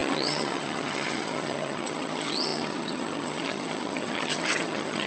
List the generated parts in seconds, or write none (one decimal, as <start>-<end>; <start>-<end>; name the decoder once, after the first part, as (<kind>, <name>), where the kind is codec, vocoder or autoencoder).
0.0-5.1 (vocoder, HiFi-GAN)